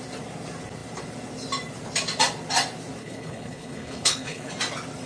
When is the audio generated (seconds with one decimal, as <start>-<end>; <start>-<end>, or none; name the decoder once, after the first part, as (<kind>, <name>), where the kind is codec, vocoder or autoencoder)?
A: 3.0-4.5 (codec, HILCodec)